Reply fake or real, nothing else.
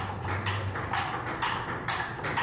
real